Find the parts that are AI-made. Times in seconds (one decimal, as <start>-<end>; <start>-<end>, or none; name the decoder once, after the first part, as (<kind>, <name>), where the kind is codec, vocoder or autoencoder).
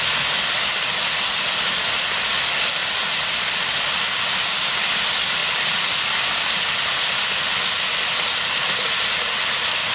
none